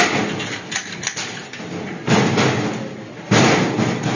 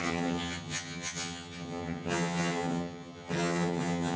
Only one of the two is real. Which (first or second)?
first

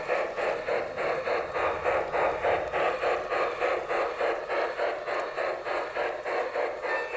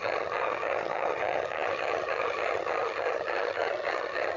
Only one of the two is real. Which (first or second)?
first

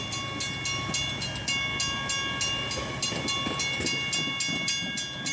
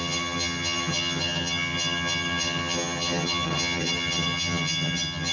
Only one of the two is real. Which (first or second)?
first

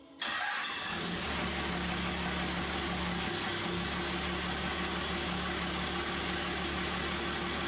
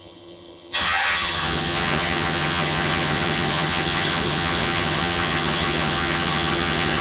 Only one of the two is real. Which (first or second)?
first